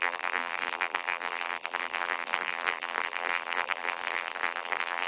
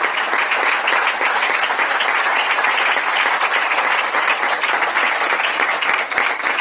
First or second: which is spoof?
first